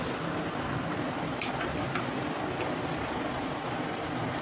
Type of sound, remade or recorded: recorded